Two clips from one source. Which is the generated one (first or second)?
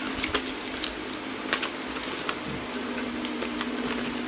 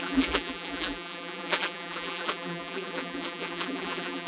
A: second